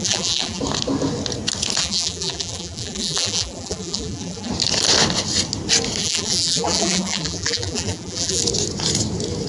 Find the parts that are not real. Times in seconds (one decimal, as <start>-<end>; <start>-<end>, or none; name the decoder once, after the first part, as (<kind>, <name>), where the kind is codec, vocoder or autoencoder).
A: 0.0-0.6 (vocoder, BigVGAN v2); 1.8-4.5; 6.0-8.4